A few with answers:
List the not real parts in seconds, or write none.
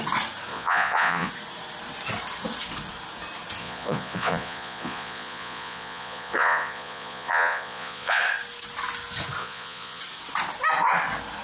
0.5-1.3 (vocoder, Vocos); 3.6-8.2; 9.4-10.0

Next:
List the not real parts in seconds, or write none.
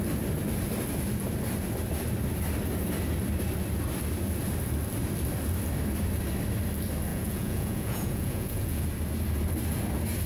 7.1-8.8 (vocoder, Vocos)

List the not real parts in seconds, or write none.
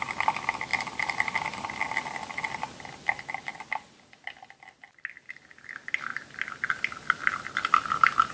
none